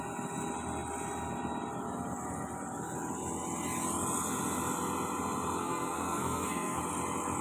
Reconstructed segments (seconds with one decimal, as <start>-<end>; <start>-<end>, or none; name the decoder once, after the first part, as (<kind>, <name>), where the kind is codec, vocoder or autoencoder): 5.6-6.8 (codec, SNAC)

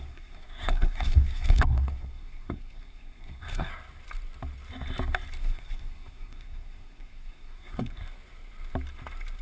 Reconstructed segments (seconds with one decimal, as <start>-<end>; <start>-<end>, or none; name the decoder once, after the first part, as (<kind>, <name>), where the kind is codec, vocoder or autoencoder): 0.0-3.7 (codec, SNAC); 5.4-8.0

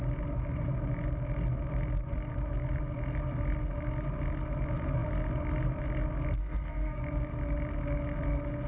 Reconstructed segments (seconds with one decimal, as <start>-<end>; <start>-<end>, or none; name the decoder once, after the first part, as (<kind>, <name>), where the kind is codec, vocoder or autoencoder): 6.4-7.0 (codec, SNAC)

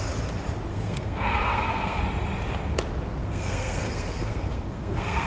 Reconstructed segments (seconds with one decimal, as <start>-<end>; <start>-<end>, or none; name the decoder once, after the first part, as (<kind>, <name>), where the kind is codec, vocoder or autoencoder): 0.7-2.0 (codec, SNAC); 3.2-5.3

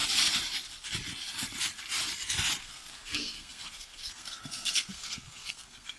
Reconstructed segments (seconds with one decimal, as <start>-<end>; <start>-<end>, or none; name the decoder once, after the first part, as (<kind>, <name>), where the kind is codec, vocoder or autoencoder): 2.6-6.0 (codec, SNAC)

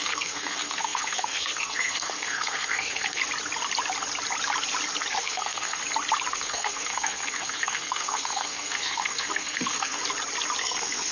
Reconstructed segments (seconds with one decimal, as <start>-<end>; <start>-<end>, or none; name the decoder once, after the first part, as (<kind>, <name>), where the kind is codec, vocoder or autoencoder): 0.0-3.2 (codec, SNAC); 5.2-5.8; 6.3-10.0; 10.6-11.1